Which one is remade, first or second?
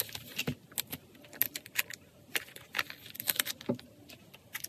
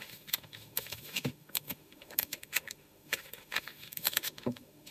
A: second